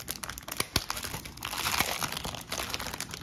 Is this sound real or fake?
real